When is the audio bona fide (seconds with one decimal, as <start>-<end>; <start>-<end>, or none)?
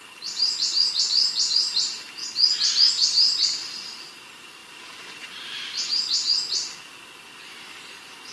2.2-2.9; 6.3-8.3